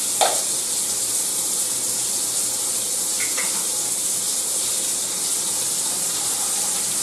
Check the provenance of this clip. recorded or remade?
recorded